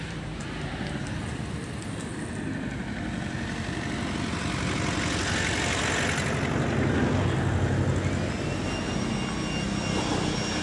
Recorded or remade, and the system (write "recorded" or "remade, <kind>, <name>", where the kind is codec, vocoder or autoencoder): recorded